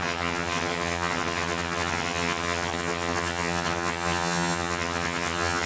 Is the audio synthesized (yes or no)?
yes